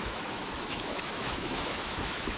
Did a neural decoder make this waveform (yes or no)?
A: yes